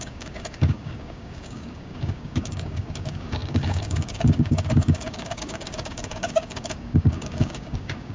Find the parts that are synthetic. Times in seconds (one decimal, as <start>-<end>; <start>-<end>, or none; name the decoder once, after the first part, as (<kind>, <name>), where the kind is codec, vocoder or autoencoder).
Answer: 0.0-8.1 (codec, DAC)